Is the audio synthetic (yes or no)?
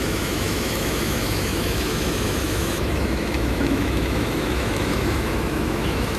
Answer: yes